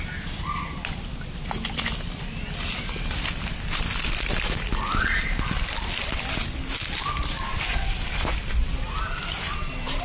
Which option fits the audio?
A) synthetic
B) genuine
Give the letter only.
B